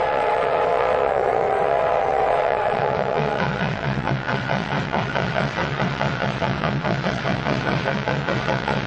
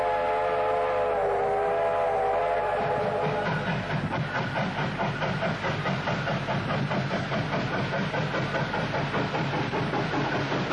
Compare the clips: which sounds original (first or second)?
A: second